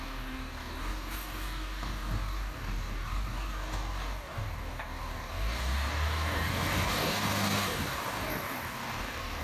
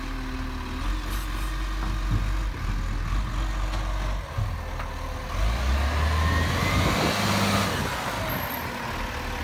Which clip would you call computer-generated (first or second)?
first